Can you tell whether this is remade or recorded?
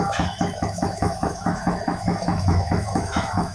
remade